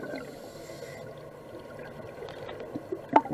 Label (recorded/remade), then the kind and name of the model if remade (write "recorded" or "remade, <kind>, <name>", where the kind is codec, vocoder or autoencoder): recorded